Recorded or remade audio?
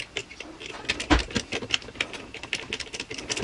recorded